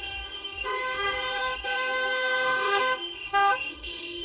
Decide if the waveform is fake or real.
fake